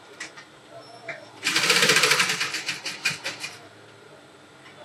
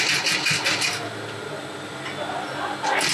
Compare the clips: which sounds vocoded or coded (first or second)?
first